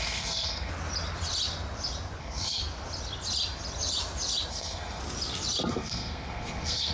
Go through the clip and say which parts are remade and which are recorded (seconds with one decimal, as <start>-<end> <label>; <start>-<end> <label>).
0.0-0.7 remade; 0.7-2.2 recorded; 2.2-2.6 remade; 2.6-4.5 recorded; 4.5-5.0 remade; 5.0-5.7 recorded; 5.7-6.9 remade